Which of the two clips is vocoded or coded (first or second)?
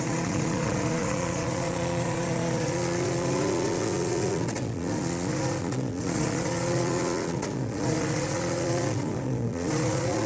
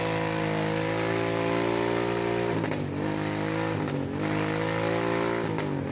first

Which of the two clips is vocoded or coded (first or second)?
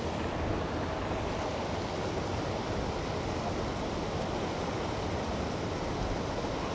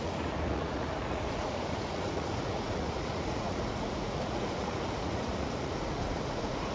second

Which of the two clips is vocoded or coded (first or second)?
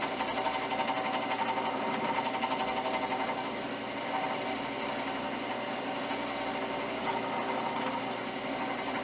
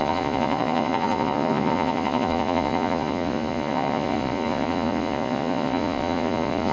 second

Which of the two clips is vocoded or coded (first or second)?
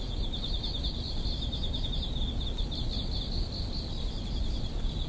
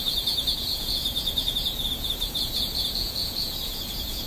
second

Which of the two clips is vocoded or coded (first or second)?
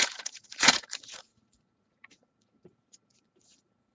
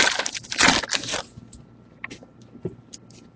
first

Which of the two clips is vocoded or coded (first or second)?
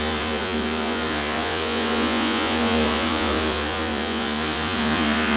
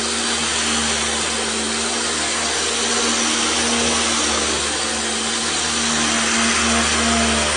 first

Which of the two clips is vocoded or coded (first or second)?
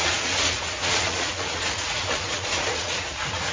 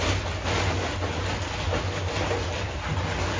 first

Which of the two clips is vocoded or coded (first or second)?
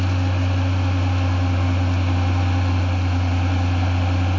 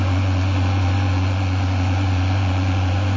second